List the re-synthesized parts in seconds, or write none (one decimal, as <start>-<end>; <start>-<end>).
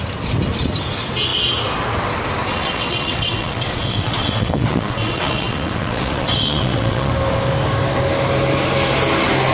2.5-7.1